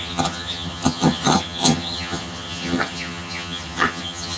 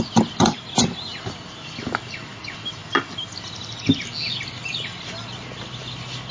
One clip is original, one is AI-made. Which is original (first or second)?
second